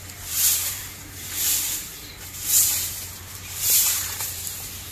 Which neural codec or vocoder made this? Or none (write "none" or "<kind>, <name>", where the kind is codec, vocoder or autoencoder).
vocoder, BigVGAN v2